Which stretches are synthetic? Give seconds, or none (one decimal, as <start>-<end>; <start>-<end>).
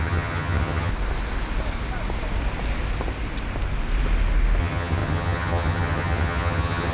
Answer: 0.0-0.9; 4.6-6.9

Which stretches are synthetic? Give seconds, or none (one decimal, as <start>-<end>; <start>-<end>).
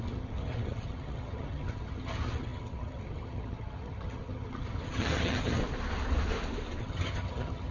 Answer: 0.0-5.6; 6.8-7.7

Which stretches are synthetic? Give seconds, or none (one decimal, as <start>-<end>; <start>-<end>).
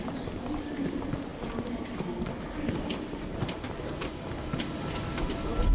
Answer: none